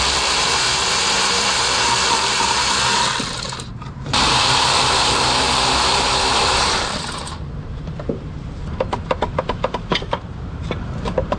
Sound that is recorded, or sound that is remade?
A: remade